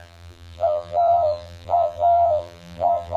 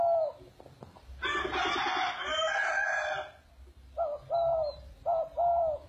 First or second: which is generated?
first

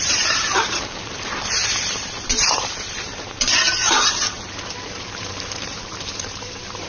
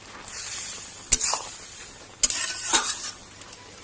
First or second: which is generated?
first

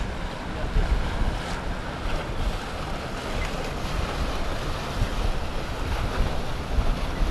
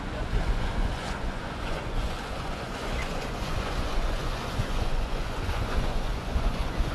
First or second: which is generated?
second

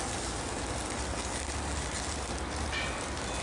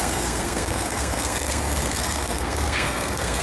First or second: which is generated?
second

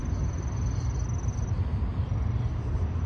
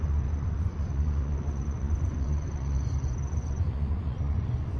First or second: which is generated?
second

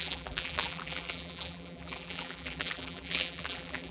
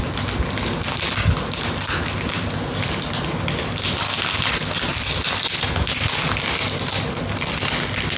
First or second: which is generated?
first